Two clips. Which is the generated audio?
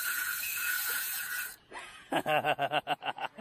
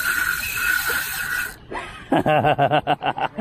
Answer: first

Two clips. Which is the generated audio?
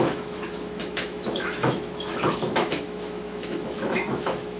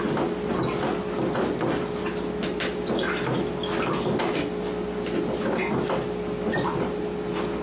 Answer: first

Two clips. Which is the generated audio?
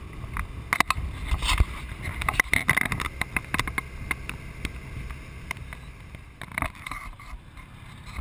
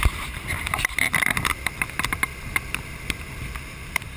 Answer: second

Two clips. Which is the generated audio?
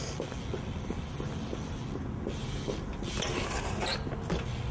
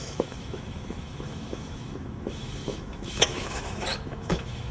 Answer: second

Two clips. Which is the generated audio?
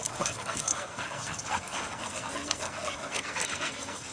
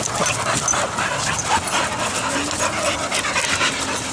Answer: first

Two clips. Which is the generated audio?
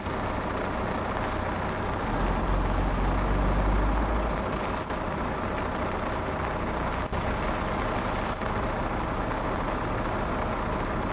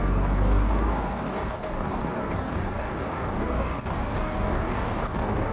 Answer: second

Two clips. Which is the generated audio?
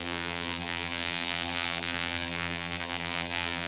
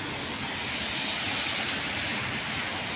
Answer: first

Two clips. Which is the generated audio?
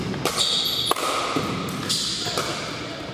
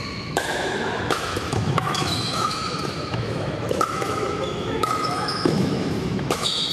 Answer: second